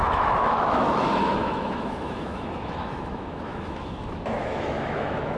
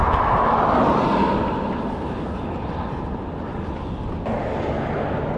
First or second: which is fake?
first